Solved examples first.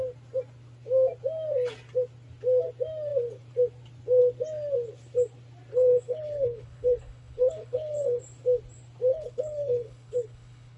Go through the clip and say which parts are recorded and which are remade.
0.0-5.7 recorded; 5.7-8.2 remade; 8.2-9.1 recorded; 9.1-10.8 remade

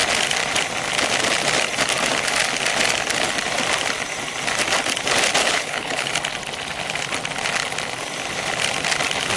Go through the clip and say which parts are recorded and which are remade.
0.0-5.4 recorded; 5.4-6.1 remade; 6.1-9.4 recorded

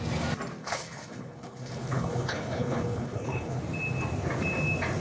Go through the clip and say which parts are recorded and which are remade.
0.0-0.6 recorded; 0.6-3.6 remade; 3.6-5.0 recorded

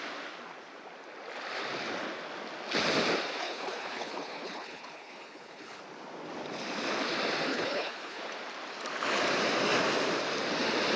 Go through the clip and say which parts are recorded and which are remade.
0.0-3.4 recorded; 3.4-5.8 remade; 5.8-7.5 recorded; 7.5-8.2 remade; 8.2-11.0 recorded

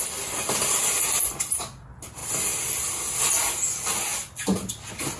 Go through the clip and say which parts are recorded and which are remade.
0.0-5.2 recorded

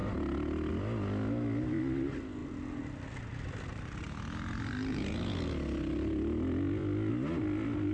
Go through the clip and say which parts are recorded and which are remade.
0.0-7.9 recorded

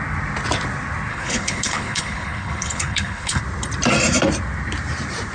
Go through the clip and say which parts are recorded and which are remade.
0.0-1.1 recorded; 1.1-3.4 remade; 3.4-5.3 recorded

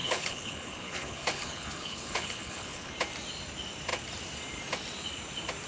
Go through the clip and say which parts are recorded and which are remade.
0.0-2.9 remade; 2.9-5.7 recorded